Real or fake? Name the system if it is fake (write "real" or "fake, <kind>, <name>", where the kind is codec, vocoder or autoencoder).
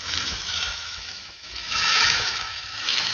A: fake, autoencoder, DAC-VAE